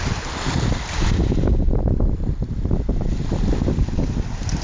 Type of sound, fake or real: real